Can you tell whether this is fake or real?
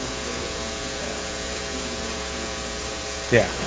fake